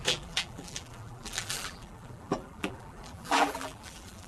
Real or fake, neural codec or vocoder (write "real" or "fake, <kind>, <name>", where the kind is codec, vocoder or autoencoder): fake, vocoder, BigVGAN v2